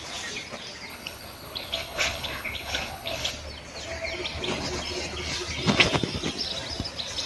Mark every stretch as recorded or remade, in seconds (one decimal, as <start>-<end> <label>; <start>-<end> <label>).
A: 0.0-0.9 recorded; 0.9-3.3 remade; 3.3-7.3 recorded